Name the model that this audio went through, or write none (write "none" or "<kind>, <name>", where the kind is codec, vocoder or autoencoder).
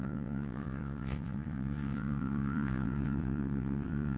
vocoder, WaveNeXt